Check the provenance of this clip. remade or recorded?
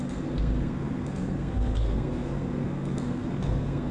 remade